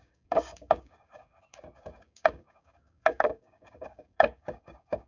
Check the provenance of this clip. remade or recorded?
remade